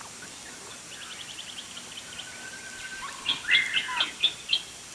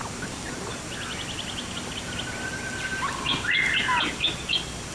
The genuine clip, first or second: second